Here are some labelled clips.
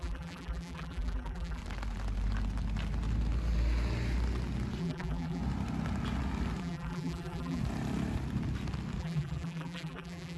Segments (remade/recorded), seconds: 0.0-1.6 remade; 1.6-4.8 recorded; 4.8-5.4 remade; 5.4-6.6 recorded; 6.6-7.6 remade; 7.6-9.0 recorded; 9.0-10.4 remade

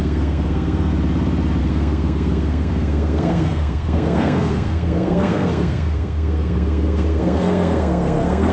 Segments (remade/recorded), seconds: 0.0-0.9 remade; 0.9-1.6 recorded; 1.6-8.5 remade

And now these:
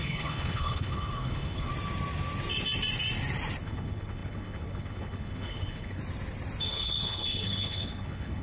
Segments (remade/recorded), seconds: 0.0-1.7 remade; 1.7-3.6 recorded; 3.6-6.0 remade; 6.0-6.7 recorded; 6.7-8.4 remade